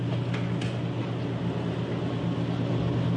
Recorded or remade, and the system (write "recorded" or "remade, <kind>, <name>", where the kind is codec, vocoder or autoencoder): recorded